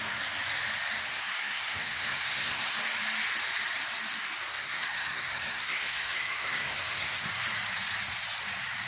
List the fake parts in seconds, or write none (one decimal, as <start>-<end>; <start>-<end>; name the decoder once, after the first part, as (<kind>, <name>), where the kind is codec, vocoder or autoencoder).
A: 1.1-2.8 (codec, SNAC); 4.5-7.3